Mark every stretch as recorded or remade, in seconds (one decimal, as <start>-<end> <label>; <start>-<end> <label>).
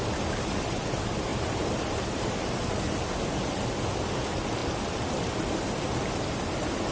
0.0-6.9 recorded